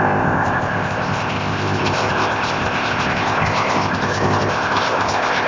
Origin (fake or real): fake